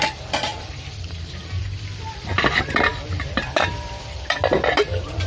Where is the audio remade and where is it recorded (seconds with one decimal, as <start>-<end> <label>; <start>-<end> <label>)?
0.0-5.3 remade

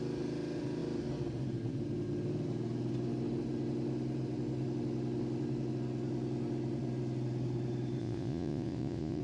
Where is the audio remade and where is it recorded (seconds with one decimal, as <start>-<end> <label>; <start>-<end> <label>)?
0.0-8.0 recorded; 8.0-9.2 remade

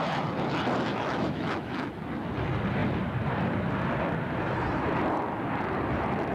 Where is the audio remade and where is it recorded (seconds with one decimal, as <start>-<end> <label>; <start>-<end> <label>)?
0.0-0.9 recorded; 0.9-1.9 remade; 1.9-6.3 recorded

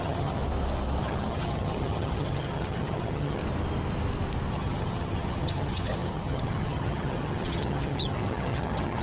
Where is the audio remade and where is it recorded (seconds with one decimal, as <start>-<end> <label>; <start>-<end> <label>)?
0.0-0.4 remade; 0.4-1.0 recorded; 1.0-3.4 remade; 3.4-4.5 recorded; 4.5-9.0 remade